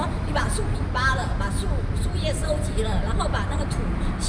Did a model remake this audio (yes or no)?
no